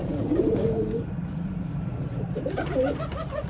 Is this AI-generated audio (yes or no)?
yes